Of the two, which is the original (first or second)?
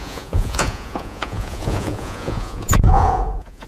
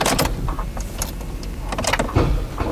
second